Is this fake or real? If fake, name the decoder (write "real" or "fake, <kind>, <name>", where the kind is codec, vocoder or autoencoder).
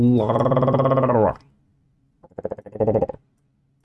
real